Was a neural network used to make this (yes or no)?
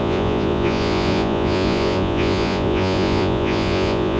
yes